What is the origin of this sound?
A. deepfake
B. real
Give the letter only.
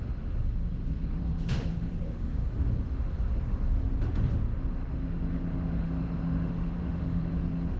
A